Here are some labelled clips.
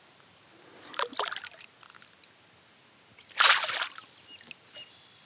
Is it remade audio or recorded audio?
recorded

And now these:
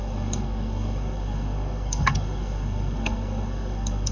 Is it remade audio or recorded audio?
remade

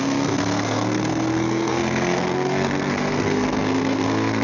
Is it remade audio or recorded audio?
remade